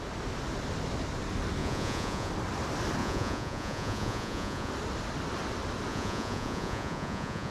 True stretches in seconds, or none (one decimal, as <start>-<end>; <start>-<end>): 0.0-1.6; 2.3-3.0; 4.7-5.9